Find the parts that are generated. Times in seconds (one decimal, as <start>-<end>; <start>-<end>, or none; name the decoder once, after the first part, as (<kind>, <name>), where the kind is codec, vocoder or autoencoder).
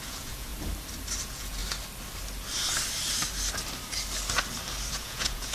0.0-0.5 (vocoder, Vocos); 1.2-1.6; 4.9-5.5